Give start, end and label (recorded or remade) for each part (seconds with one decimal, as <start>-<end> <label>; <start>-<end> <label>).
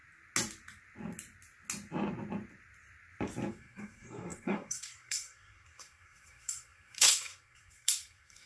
0.0-3.5 recorded; 3.5-8.5 remade